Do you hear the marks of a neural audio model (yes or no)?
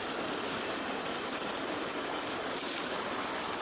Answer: no